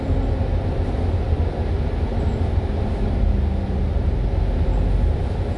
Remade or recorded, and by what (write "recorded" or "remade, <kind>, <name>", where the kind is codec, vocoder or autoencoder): recorded